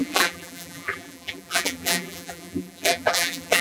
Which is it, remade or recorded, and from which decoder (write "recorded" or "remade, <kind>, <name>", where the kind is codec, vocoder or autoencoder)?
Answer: remade, vocoder, BigVGAN v2